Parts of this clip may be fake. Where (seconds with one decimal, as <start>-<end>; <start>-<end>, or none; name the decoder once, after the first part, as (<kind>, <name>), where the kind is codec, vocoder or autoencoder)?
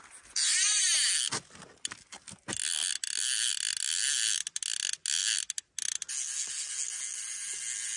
none